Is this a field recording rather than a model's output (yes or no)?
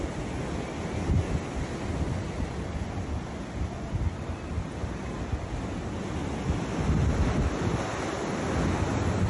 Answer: yes